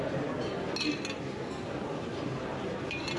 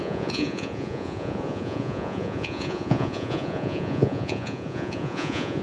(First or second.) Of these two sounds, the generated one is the second